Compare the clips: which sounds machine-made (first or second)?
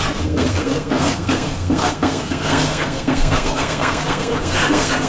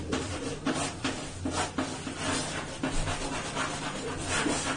first